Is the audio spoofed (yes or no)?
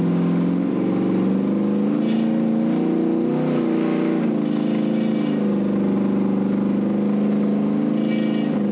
no